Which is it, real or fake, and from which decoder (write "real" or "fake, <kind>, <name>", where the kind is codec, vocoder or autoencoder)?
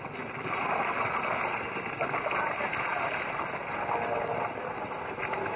real